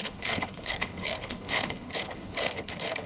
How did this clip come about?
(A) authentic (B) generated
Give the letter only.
B